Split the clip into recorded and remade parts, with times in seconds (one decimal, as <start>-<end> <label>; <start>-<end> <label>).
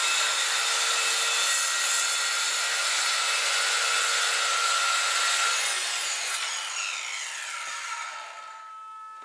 0.0-2.8 recorded; 2.8-6.4 remade; 6.4-9.2 recorded